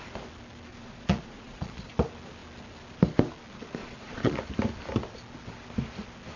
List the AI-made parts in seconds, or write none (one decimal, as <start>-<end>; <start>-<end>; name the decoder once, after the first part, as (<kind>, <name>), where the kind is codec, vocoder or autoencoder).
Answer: 0.7-1.9 (vocoder, Vocos); 3.8-4.4